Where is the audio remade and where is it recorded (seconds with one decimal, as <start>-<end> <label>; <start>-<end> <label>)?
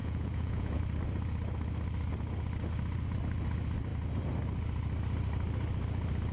0.0-0.8 remade; 0.8-6.3 recorded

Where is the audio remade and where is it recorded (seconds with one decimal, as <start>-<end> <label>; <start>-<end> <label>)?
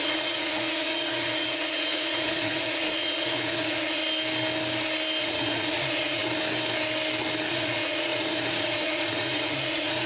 0.0-4.0 remade; 4.0-5.2 recorded; 5.2-6.2 remade; 6.2-7.5 recorded; 7.5-10.1 remade